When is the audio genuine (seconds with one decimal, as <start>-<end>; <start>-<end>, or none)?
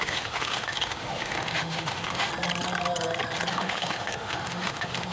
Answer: 2.3-3.5